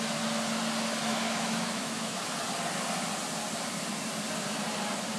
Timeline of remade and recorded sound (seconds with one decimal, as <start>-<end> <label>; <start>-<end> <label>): 0.0-1.1 recorded; 1.1-2.2 remade; 2.2-5.2 recorded